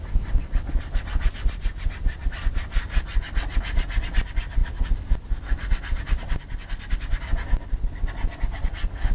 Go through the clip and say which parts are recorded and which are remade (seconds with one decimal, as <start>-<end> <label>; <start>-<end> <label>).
0.0-9.1 recorded